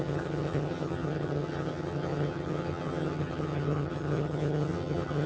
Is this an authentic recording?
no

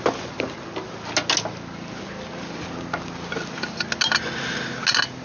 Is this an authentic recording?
yes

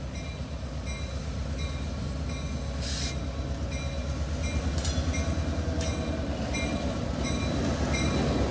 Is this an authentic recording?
yes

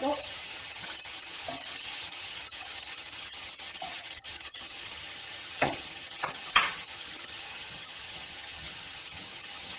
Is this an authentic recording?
no